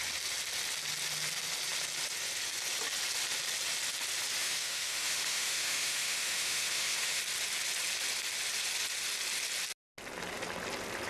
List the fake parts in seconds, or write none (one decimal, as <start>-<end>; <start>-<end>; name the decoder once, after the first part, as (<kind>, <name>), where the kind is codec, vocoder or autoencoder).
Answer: 4.4-7.2 (autoencoder, DAC-VAE)

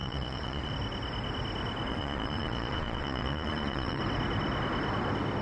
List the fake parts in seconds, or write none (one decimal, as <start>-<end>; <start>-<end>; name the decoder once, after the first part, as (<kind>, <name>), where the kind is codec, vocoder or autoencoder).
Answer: 0.0-0.7 (vocoder, Vocos); 1.9-4.0